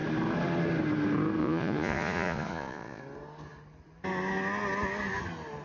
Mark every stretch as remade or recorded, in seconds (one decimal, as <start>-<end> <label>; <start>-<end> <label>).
0.0-1.4 recorded; 1.4-3.0 remade; 3.0-5.6 recorded